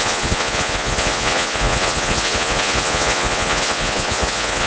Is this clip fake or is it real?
fake